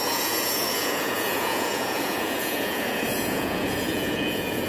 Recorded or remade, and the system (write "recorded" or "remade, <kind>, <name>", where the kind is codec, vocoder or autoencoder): remade, vocoder, Vocos